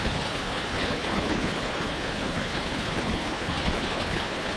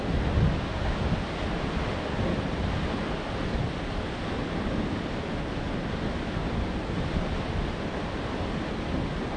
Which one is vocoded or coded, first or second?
first